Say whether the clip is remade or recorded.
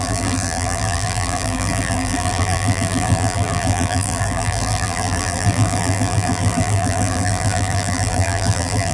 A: remade